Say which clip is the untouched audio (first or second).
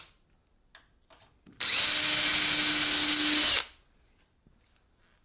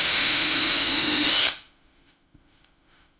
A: first